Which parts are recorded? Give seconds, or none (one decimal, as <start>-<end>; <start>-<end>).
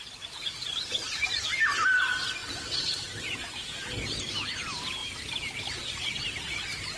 0.0-7.0